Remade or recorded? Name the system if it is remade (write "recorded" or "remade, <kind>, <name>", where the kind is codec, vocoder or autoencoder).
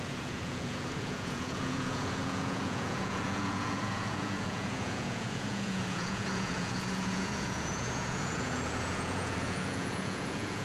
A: remade, vocoder, Vocos